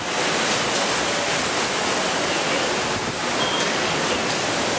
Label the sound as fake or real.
real